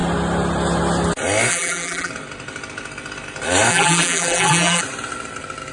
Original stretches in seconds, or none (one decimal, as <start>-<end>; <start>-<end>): 0.0-1.5; 2.1-3.7; 4.8-5.7